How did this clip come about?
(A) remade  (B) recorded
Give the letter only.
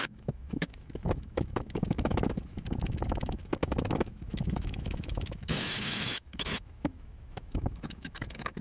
A